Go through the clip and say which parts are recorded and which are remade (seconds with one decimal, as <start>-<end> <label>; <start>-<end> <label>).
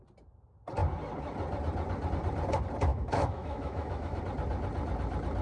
0.0-2.9 recorded; 2.9-4.2 remade; 4.2-5.4 recorded